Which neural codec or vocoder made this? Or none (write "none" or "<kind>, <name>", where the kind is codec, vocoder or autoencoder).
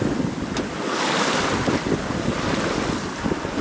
none